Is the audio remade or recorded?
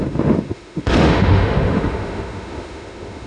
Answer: remade